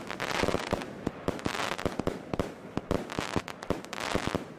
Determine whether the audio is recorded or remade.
recorded